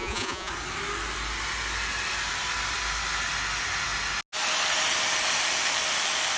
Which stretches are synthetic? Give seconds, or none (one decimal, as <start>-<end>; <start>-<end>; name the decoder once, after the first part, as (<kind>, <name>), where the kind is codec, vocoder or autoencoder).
0.0-0.5 (vocoder, Vocos)